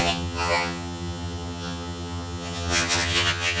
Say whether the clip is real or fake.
fake